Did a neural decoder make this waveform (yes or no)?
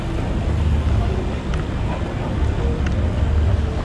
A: no